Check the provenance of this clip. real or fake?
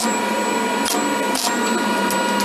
real